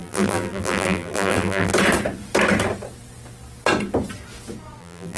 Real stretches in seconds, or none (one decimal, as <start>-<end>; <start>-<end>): 1.7-4.8